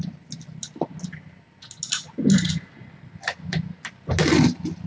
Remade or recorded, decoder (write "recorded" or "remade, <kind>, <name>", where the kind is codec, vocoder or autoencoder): recorded